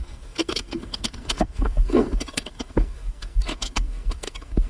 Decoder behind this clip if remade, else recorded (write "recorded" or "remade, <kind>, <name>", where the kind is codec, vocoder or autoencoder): remade, codec, SNAC